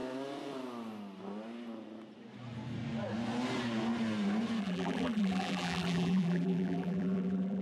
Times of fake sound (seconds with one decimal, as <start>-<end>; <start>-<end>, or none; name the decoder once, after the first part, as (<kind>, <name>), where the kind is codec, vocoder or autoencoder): 4.6-7.6 (vocoder, BigVGAN v2)